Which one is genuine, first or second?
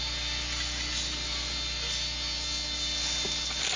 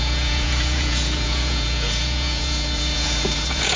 first